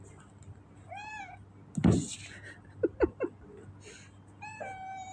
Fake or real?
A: real